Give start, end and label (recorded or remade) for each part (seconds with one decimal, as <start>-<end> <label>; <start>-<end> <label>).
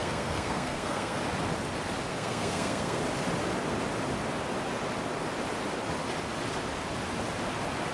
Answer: 0.0-1.2 remade; 1.2-2.1 recorded; 2.1-3.0 remade; 3.0-7.9 recorded